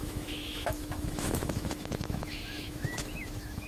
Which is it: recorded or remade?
remade